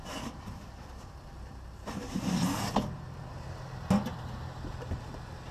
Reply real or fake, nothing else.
real